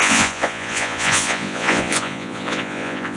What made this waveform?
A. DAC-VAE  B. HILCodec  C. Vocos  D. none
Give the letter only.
C